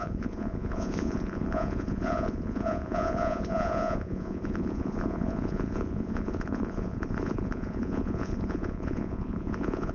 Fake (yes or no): yes